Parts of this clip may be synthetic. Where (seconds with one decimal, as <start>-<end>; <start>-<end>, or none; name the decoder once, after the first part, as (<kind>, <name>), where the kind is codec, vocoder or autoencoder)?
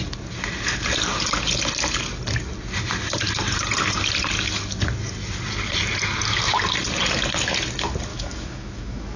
8.1-9.2 (autoencoder, DAC-VAE)